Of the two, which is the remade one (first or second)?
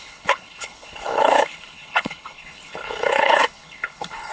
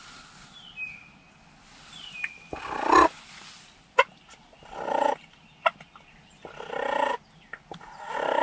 first